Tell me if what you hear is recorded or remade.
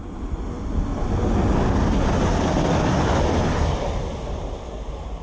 recorded